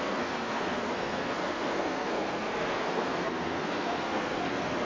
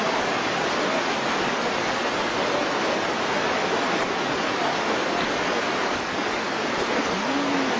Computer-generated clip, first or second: first